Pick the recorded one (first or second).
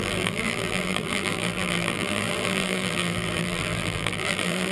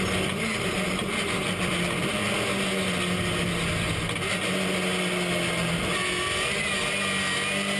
second